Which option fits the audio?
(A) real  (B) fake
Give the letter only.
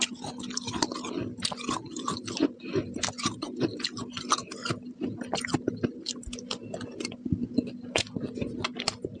A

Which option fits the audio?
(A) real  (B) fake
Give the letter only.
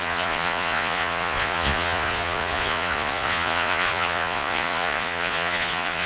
B